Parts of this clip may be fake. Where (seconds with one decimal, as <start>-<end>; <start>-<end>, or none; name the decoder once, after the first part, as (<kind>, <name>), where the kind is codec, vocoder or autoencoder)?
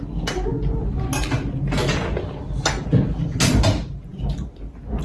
none